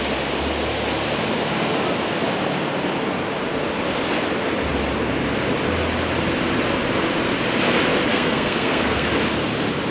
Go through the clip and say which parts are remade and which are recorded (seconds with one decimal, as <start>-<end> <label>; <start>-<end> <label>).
0.0-8.1 recorded; 8.1-9.1 remade; 9.1-9.9 recorded